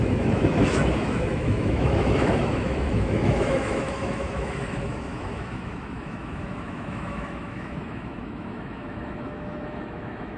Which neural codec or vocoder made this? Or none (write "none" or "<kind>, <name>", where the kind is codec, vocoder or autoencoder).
autoencoder, DAC-VAE